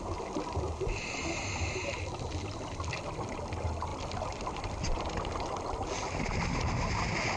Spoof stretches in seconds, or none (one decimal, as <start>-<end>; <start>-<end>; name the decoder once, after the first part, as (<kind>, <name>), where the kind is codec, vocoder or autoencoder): 3.9-6.2 (vocoder, BigVGAN v2)